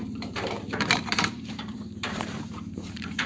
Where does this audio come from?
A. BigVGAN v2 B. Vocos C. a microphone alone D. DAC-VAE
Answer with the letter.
A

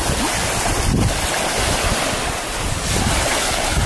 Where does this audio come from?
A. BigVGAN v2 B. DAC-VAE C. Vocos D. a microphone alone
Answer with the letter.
D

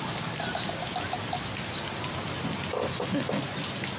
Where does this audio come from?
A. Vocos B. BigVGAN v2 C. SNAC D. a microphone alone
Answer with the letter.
D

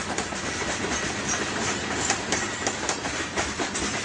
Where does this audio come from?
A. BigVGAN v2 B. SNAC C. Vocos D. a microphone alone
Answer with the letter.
D